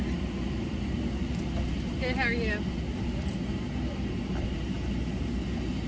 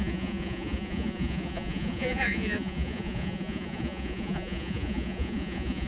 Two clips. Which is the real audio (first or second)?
first